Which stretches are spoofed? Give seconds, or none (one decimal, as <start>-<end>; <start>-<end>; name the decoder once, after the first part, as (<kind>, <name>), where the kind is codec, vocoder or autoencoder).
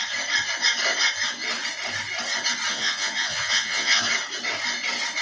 2.7-4.0 (vocoder, Vocos)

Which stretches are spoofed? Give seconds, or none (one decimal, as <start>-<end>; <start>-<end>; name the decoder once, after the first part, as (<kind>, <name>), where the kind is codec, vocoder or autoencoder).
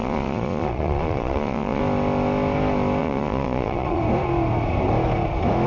0.0-1.8 (vocoder, Vocos); 3.0-4.0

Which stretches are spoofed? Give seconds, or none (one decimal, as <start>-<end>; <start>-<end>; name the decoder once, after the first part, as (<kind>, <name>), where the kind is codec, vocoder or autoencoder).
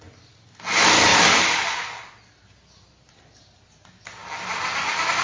none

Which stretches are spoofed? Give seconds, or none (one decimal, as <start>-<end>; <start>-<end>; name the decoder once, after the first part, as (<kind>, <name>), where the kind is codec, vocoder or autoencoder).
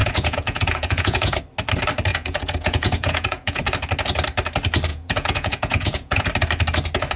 0.0-1.4 (vocoder, Vocos); 2.1-3.6; 4.9-6.3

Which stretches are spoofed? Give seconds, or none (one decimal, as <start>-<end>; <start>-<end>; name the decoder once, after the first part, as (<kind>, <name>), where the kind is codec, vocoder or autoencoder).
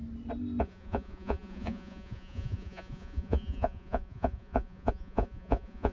0.6-5.9 (vocoder, Vocos)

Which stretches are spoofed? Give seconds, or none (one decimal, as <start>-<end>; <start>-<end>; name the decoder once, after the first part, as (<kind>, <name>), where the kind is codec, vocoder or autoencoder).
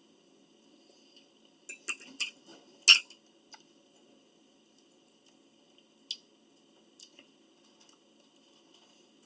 none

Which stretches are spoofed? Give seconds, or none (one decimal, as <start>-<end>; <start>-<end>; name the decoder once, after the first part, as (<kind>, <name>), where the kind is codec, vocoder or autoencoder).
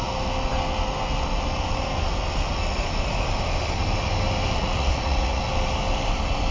4.6-5.4 (vocoder, Vocos)